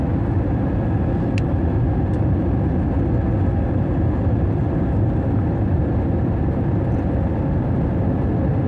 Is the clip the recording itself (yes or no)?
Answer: yes